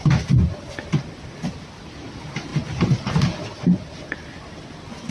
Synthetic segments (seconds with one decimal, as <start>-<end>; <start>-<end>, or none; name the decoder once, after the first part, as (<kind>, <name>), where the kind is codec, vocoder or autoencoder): none